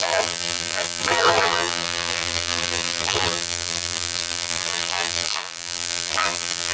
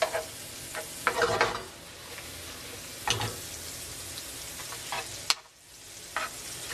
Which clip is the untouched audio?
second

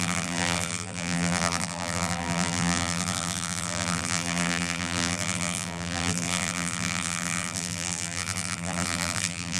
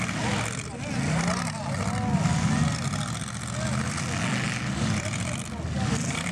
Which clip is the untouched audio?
second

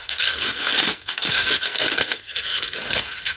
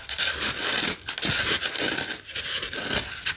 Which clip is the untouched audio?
second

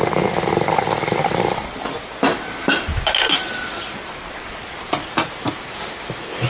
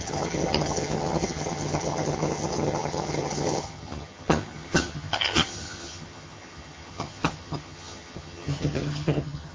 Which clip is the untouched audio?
first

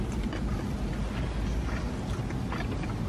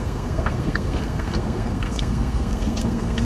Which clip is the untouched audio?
first